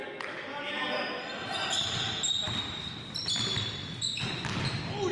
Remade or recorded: recorded